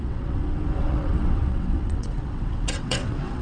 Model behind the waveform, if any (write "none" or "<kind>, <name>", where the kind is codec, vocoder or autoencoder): vocoder, WaveNeXt